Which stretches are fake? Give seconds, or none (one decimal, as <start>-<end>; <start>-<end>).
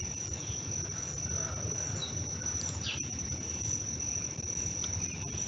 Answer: 2.0-3.7